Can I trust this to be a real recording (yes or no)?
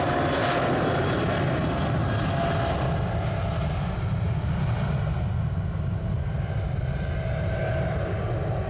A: yes